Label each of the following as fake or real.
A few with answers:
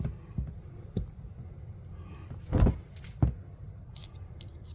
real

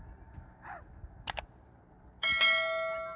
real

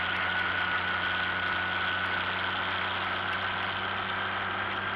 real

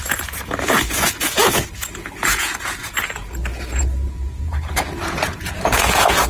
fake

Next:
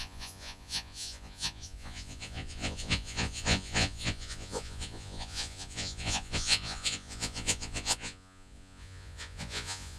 fake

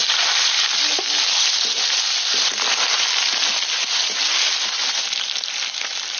real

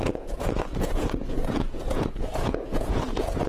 fake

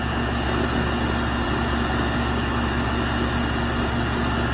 real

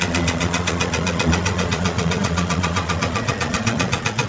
fake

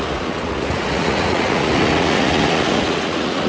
fake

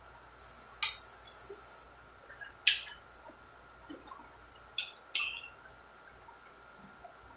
real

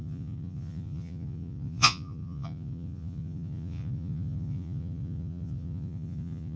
fake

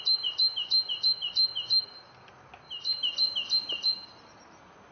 real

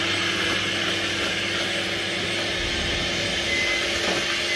real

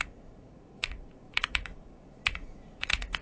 fake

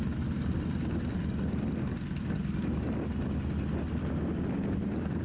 real